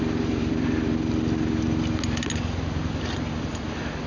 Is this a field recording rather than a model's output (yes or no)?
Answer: yes